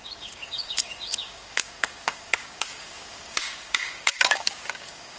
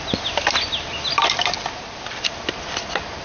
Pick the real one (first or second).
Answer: second